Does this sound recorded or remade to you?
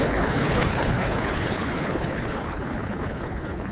remade